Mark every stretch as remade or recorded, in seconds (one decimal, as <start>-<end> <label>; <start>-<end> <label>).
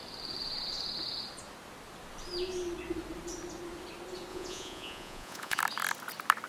0.0-4.3 recorded; 4.3-5.6 remade; 5.6-6.5 recorded